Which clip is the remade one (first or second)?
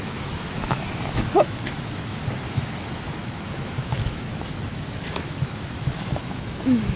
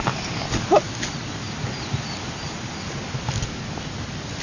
first